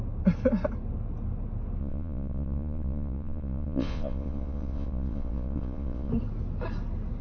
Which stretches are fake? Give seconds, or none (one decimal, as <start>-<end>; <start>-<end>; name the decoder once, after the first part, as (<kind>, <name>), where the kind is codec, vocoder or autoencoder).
1.8-6.1 (vocoder, Vocos)